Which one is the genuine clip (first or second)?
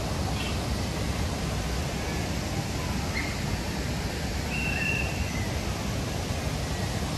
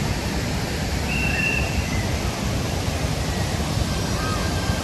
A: first